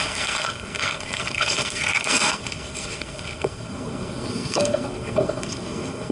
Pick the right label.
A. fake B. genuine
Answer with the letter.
A